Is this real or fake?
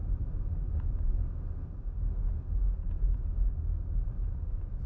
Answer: real